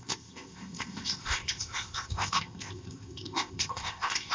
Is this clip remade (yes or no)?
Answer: yes